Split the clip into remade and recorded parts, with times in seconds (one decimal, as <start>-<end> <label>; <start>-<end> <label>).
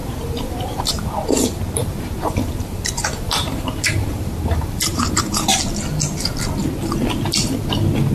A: 0.0-0.9 remade; 0.9-1.8 recorded; 1.8-5.4 remade; 5.4-8.1 recorded